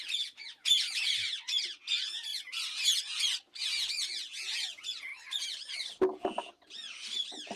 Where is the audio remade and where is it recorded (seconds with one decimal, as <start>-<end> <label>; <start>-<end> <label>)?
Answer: 0.0-2.3 remade; 2.3-3.7 recorded; 3.7-5.1 remade; 5.1-7.6 recorded